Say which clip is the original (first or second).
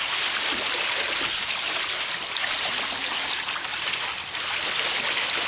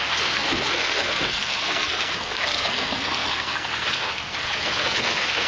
first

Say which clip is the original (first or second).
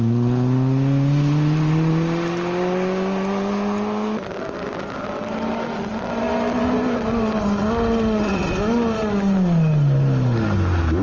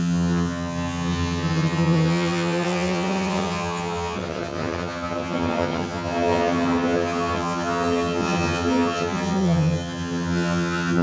first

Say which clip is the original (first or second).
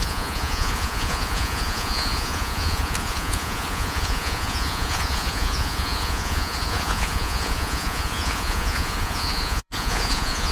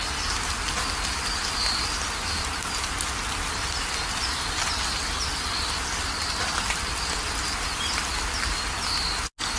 second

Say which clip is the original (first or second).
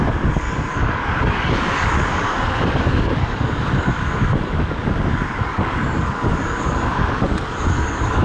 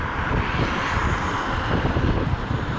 second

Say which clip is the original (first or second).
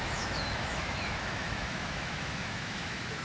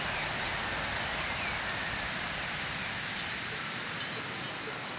second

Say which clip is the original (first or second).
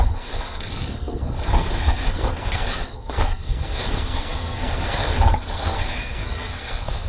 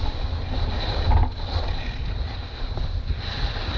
second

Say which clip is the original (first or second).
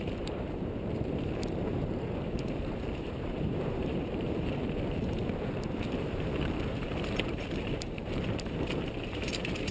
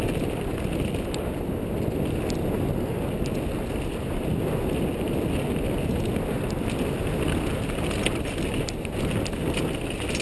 second